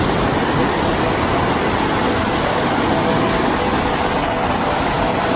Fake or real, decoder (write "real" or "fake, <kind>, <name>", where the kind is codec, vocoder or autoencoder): real